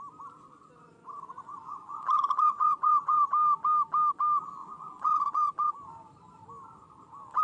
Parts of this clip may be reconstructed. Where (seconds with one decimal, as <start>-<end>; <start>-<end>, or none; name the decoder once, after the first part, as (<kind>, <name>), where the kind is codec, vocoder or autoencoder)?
1.5-3.2 (vocoder, Vocos); 4.6-5.7